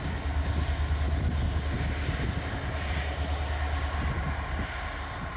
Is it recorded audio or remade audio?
recorded